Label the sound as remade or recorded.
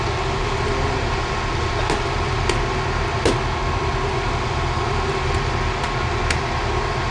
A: recorded